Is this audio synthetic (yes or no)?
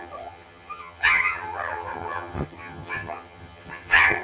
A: yes